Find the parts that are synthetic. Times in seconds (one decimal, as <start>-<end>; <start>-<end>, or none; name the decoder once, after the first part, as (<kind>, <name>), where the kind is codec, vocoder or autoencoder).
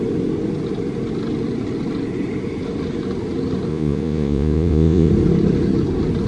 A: 3.7-5.1 (vocoder, Vocos)